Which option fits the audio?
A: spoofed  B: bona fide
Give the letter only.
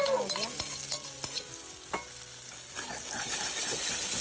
B